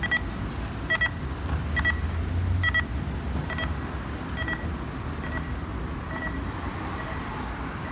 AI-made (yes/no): no